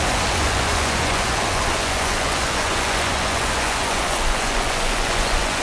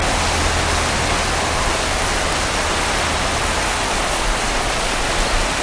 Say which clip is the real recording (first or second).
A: second